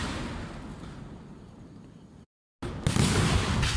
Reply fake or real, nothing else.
real